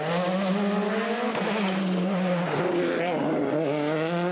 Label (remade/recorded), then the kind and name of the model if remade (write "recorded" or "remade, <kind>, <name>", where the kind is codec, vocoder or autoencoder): recorded